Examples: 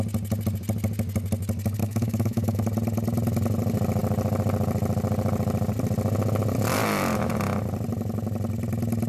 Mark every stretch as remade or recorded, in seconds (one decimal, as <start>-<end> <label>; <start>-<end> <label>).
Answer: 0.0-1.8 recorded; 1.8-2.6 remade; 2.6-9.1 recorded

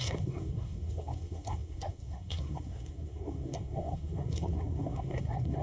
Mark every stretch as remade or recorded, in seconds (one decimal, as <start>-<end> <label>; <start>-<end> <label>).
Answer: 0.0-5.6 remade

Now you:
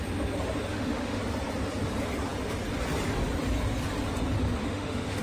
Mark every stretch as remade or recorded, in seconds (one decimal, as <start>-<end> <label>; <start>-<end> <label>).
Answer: 0.0-0.7 recorded; 0.7-1.2 remade; 1.2-4.6 recorded; 4.6-5.2 remade

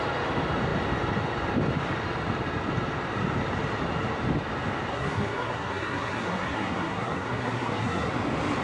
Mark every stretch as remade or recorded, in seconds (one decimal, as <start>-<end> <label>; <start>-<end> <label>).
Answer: 0.0-4.9 recorded; 4.9-8.1 remade; 8.1-8.6 recorded

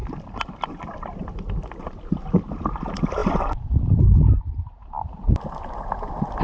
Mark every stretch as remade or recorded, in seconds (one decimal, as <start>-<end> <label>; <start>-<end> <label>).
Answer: 0.0-6.4 recorded

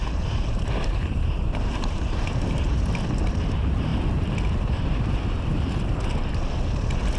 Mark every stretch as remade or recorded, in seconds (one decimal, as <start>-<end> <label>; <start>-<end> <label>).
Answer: 0.0-2.8 remade; 2.8-7.2 recorded